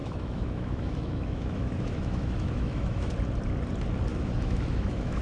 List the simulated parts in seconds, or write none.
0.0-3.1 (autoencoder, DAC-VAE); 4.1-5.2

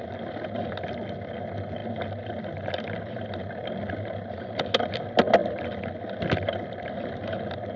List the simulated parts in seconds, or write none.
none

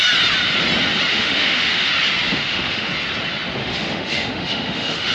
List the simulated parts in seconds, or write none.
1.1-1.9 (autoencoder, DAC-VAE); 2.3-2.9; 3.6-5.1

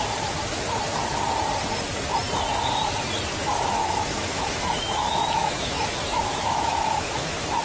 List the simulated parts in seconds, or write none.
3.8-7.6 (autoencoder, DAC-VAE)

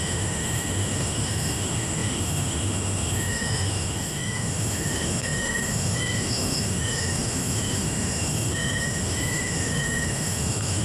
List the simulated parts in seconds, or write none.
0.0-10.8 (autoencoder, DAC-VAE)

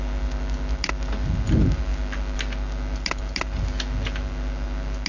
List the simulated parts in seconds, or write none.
none

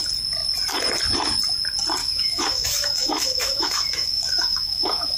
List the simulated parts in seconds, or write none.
2.0-5.2 (autoencoder, DAC-VAE)